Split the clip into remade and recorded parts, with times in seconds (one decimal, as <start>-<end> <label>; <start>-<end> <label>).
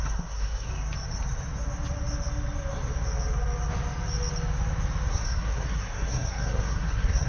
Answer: 0.0-0.7 remade; 0.7-5.1 recorded; 5.1-7.3 remade